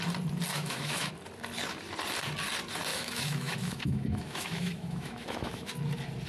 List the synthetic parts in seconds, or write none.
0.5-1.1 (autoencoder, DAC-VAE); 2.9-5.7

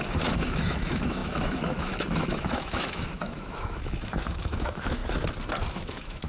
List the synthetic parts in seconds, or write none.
0.0-5.0 (autoencoder, DAC-VAE); 5.7-6.3

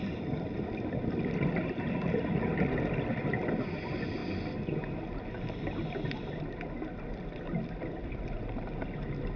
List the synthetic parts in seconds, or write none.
none

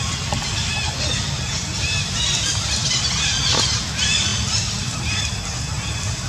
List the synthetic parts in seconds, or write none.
none

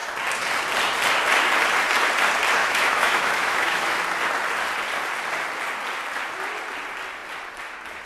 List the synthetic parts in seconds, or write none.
2.6-4.0 (autoencoder, DAC-VAE)